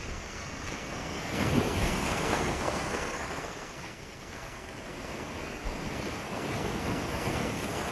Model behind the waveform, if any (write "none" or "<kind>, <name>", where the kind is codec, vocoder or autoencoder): codec, SNAC